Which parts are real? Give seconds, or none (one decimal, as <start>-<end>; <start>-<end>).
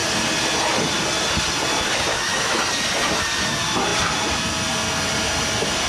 0.0-2.1; 2.6-5.9